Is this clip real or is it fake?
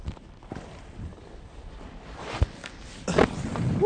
real